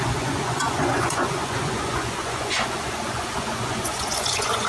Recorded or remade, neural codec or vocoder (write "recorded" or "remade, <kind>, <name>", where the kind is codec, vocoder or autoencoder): remade, vocoder, Vocos